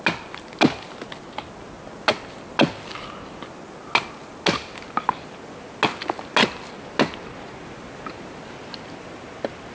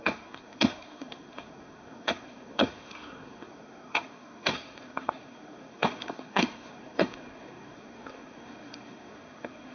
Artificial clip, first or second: second